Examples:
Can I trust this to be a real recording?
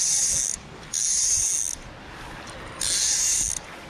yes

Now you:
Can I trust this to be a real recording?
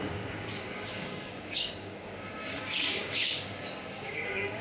no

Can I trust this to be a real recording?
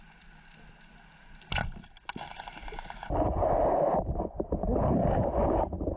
yes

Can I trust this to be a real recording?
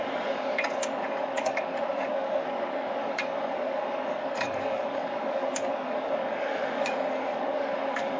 no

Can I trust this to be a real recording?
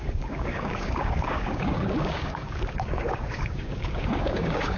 no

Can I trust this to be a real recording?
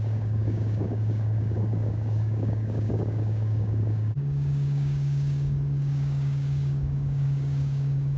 no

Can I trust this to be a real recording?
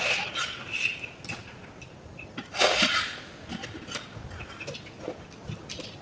yes